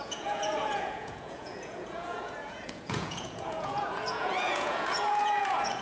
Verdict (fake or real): fake